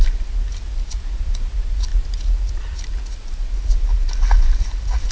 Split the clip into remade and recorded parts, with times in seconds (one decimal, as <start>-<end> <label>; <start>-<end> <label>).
0.0-0.5 recorded; 0.5-1.3 remade; 1.3-1.9 recorded; 1.9-3.9 remade; 3.9-5.1 recorded